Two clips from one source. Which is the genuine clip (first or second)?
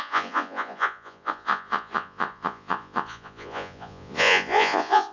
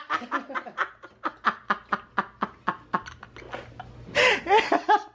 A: second